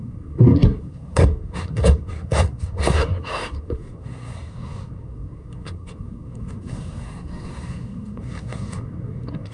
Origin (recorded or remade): remade